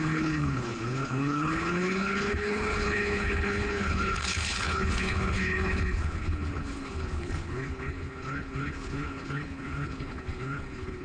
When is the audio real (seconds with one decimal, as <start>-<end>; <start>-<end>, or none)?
none